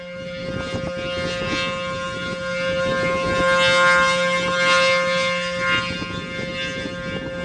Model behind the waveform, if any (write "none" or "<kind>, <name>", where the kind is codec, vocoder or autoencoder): none